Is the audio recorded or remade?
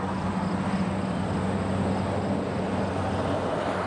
recorded